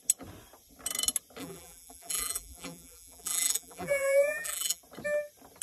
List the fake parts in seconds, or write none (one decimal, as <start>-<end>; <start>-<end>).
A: 1.4-4.8